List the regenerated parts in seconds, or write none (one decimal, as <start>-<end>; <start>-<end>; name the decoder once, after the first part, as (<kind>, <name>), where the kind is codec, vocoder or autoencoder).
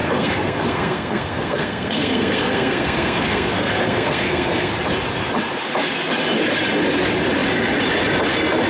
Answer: 0.0-4.7 (codec, SNAC)